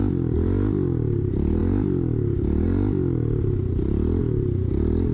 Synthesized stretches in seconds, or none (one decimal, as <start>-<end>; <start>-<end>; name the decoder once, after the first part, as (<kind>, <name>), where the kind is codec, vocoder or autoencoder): none